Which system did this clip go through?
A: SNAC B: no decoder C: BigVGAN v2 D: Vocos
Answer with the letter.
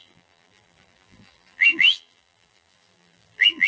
C